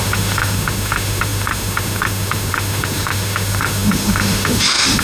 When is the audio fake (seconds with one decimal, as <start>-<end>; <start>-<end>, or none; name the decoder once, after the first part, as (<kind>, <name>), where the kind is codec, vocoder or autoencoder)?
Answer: 0.0-5.0 (autoencoder, DAC-VAE)